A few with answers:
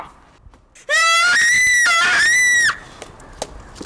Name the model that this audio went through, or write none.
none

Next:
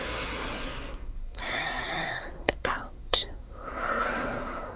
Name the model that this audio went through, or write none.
codec, SNAC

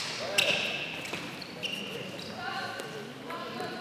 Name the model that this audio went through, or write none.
none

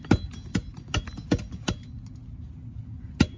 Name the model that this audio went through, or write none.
none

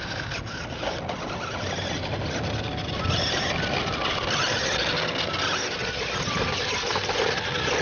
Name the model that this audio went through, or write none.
none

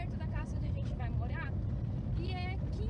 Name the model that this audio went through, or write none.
none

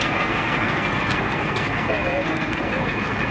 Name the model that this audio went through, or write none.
codec, SNAC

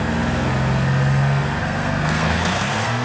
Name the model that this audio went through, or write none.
codec, SNAC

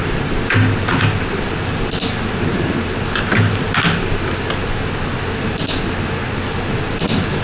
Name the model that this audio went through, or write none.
none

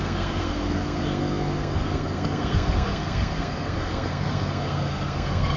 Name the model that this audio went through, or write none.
codec, SNAC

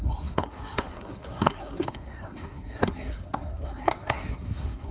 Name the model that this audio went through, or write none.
codec, SNAC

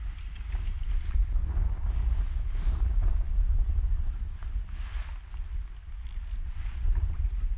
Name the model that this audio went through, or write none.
none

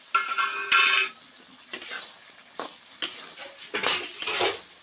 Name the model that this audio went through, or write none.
none